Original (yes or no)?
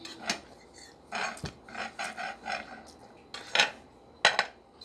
yes